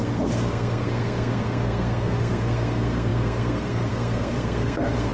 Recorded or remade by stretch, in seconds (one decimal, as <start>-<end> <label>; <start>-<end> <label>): 0.0-5.1 remade